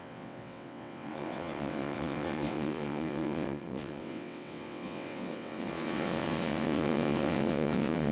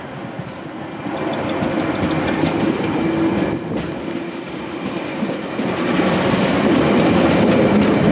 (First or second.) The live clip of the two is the second